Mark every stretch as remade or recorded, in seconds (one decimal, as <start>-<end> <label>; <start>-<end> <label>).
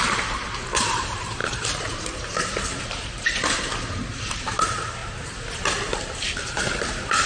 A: 0.0-5.0 remade; 5.0-5.6 recorded; 5.6-7.3 remade